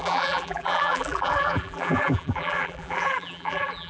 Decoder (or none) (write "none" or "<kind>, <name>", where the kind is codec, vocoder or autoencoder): vocoder, BigVGAN v2